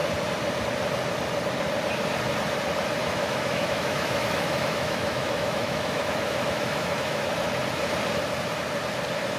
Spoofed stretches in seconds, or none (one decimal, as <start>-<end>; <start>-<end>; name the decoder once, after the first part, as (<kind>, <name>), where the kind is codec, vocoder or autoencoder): 3.0-7.3 (autoencoder, DAC-VAE)